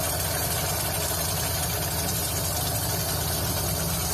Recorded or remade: recorded